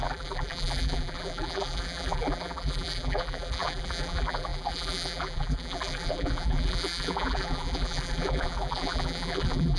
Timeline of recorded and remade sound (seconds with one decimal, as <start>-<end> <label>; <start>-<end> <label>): 0.0-9.8 remade